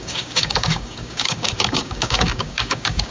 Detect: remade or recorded remade